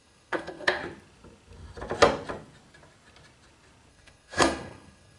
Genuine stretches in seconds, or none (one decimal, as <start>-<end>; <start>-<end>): 0.8-3.9